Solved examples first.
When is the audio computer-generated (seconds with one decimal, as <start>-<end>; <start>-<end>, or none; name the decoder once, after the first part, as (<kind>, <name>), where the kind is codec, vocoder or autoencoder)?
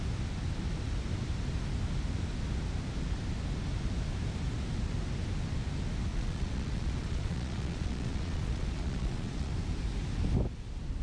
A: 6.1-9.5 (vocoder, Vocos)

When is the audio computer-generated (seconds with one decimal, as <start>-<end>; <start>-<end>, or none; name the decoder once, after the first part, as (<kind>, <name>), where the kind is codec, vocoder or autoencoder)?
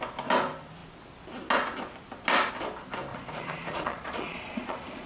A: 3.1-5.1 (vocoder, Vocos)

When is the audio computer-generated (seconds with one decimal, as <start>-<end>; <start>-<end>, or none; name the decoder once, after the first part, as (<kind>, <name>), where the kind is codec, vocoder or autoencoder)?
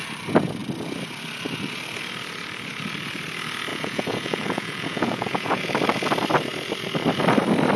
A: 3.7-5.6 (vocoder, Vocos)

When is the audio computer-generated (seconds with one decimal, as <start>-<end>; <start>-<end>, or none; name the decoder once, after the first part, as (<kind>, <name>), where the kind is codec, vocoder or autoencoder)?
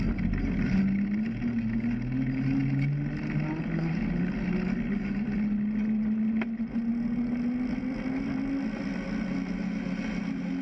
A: none